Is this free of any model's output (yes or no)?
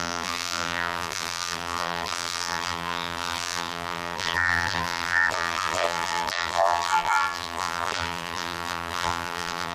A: no